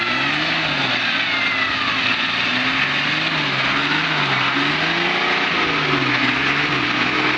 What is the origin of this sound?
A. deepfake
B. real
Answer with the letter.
B